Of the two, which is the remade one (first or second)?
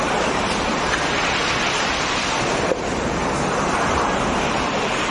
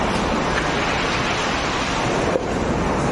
first